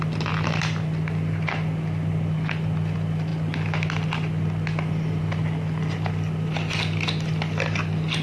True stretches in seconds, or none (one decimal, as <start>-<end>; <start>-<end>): 0.0-8.2